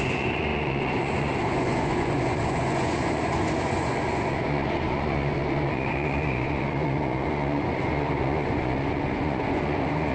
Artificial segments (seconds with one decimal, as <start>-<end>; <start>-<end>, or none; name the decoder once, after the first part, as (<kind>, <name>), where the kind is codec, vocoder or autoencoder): 0.0-10.1 (vocoder, Vocos)